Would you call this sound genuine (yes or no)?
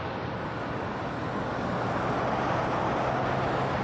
yes